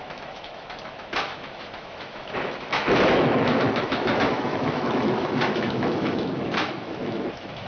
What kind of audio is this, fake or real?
fake